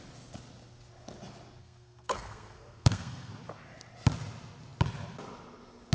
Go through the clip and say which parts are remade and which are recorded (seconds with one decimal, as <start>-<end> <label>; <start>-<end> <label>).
0.0-1.6 recorded; 1.6-3.3 remade; 3.3-5.9 recorded